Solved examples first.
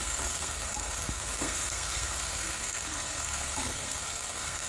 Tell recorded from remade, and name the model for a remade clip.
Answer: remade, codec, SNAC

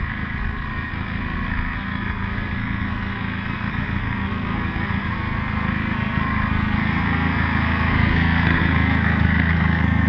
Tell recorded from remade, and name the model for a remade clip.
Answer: remade, codec, SNAC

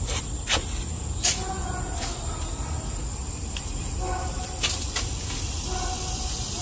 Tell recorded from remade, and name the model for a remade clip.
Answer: recorded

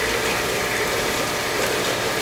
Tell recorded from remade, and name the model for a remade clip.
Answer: remade, vocoder, BigVGAN v2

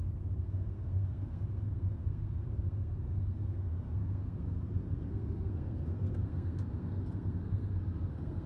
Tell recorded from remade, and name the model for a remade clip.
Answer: remade, codec, SNAC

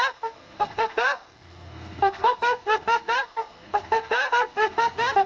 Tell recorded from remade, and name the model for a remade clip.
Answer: remade, codec, SNAC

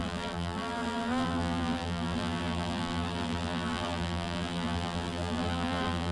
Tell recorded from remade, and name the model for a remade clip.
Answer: remade, vocoder, BigVGAN v2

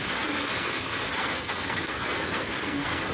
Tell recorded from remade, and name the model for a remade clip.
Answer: remade, codec, SNAC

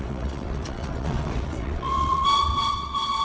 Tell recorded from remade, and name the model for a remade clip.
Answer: remade, vocoder, WaveNeXt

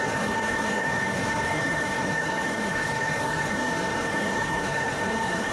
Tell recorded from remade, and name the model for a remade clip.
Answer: remade, codec, SNAC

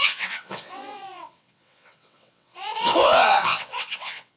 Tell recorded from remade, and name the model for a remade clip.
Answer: remade, vocoder, WaveNeXt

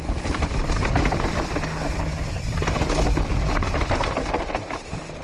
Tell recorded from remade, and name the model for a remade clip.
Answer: remade, vocoder, BigVGAN v2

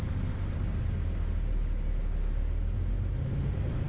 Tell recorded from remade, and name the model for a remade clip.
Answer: recorded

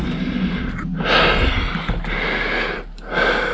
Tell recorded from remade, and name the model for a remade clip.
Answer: recorded